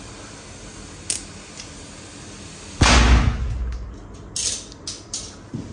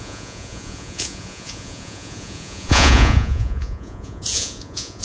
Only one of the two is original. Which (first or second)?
first